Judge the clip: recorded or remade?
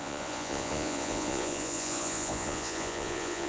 remade